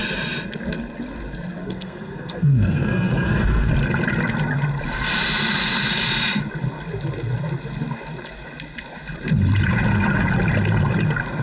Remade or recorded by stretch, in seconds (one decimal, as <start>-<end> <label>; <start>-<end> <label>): 0.0-1.6 recorded; 1.6-3.7 remade; 3.7-11.4 recorded